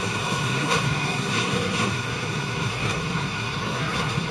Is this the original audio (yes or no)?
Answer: no